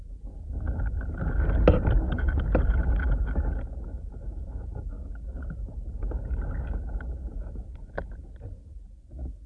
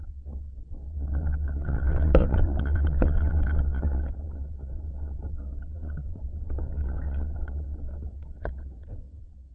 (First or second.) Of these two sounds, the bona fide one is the first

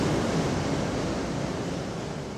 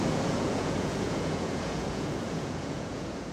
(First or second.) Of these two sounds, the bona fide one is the first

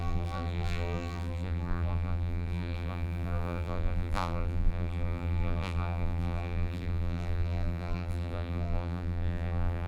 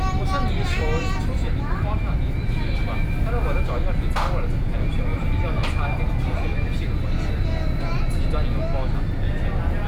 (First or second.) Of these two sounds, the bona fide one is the second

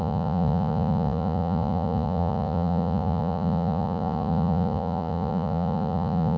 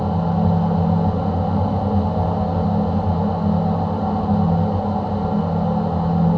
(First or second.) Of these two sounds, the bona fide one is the second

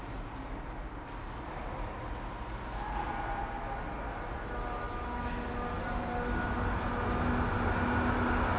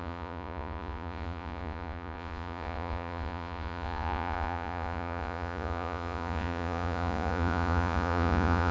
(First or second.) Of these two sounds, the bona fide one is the first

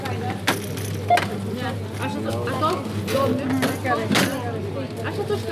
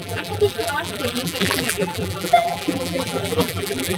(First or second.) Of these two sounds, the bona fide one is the first